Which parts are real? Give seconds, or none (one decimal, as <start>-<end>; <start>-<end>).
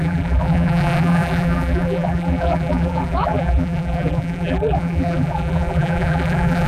none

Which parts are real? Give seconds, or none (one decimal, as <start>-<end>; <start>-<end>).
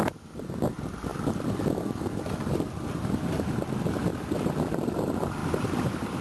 0.0-1.1; 3.3-4.1; 4.7-5.4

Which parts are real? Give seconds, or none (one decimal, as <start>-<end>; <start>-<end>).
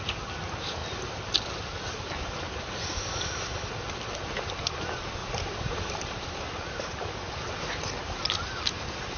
0.0-5.2; 6.4-9.2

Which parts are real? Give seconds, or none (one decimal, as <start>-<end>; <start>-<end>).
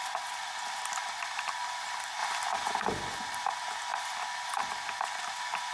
2.2-2.8; 3.9-5.7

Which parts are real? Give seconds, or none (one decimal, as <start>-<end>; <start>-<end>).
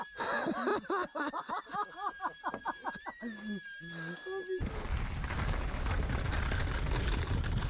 0.0-2.0; 2.6-7.7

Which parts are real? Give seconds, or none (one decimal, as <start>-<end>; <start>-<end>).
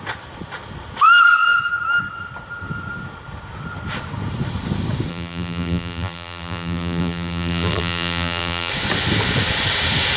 0.0-5.1; 8.7-10.2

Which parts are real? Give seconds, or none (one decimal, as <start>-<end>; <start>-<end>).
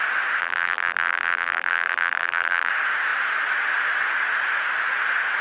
0.0-0.4; 2.7-5.4